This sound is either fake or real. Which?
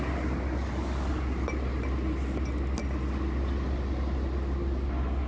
real